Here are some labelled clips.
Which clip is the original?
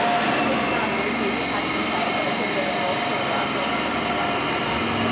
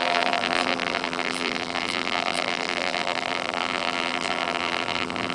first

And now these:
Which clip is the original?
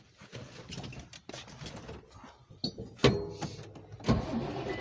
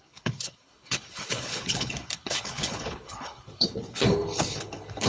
first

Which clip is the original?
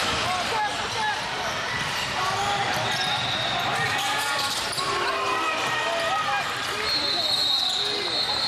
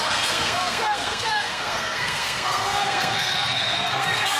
first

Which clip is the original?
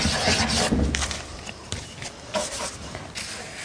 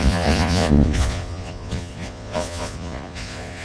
first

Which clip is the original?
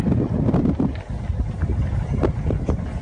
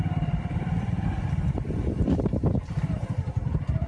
first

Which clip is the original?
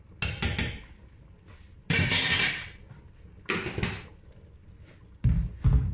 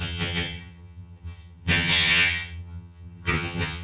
first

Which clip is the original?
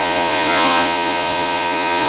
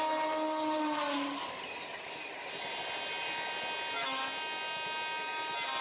second